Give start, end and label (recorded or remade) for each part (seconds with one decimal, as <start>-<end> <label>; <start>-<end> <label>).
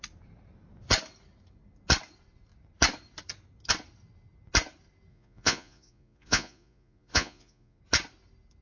0.0-5.1 recorded; 5.1-7.8 remade; 7.8-8.6 recorded